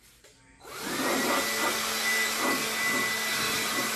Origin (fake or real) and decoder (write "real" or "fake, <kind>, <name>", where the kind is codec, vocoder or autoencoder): real